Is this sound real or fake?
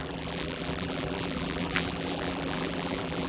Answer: fake